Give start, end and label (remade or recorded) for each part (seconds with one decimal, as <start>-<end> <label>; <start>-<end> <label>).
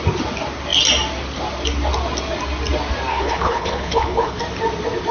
0.0-3.1 recorded; 3.1-4.4 remade; 4.4-5.1 recorded